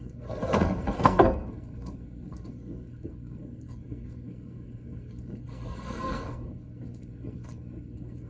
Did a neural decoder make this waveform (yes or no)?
yes